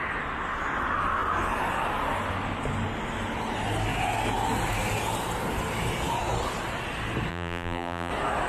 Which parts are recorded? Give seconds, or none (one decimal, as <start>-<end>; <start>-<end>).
0.0-7.3; 8.1-8.5

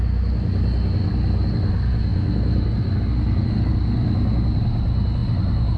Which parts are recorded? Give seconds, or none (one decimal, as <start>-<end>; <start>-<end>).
0.0-5.8

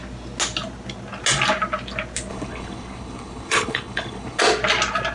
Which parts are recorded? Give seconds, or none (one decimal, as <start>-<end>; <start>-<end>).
0.0-2.3; 4.4-5.1

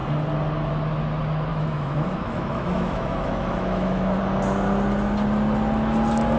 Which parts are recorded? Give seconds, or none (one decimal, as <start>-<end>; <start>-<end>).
0.0-1.5; 4.2-6.4

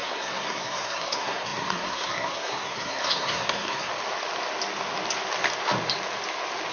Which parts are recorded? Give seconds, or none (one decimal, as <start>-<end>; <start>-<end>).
3.9-6.7

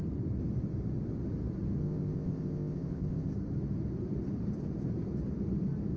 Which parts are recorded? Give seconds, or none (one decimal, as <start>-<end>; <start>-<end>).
0.0-1.8; 3.3-6.0

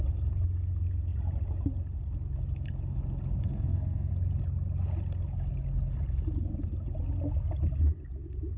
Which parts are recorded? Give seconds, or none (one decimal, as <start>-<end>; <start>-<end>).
0.0-3.5; 4.1-8.6

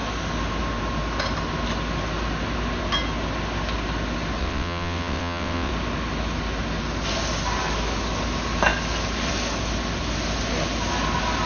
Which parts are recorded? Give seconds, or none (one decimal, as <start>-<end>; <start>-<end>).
0.0-4.4; 5.7-11.5